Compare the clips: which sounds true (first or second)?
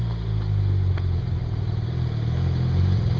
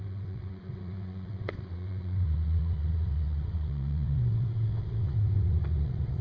first